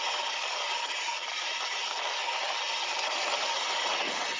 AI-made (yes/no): no